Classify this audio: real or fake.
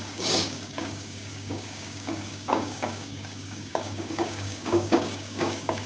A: fake